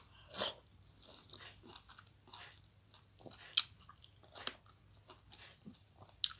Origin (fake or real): real